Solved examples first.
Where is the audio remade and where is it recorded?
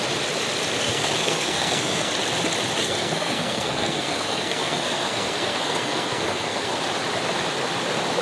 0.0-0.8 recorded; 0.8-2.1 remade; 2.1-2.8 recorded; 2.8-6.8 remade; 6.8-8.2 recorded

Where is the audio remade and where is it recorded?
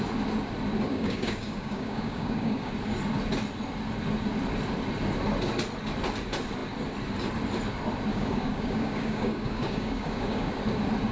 0.0-0.9 recorded; 0.9-2.7 remade; 2.7-8.1 recorded; 8.1-10.5 remade; 10.5-11.1 recorded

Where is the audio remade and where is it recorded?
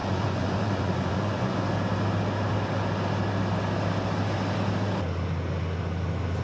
0.0-1.5 remade; 1.5-6.4 recorded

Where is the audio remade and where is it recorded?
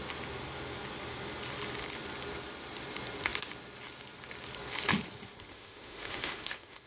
0.0-5.5 recorded; 5.5-6.9 remade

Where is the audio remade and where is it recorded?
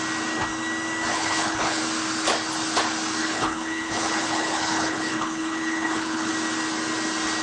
0.0-1.1 recorded; 1.1-1.8 remade; 1.8-3.2 recorded; 3.2-6.3 remade; 6.3-7.4 recorded